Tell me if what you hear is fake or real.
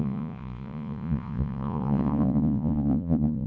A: fake